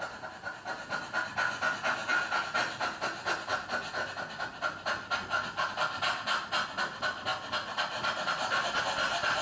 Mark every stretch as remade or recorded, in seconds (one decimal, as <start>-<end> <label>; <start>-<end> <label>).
0.0-9.4 recorded